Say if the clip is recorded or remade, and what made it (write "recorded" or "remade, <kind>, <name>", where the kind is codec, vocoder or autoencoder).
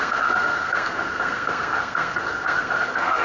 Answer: remade, codec, SNAC